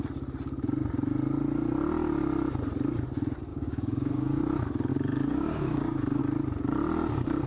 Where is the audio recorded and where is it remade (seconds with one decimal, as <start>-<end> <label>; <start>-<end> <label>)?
0.0-3.5 recorded; 3.5-4.4 remade; 4.4-4.9 recorded; 4.9-6.2 remade; 6.2-7.5 recorded